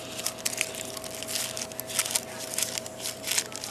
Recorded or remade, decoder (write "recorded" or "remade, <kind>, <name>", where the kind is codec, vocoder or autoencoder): recorded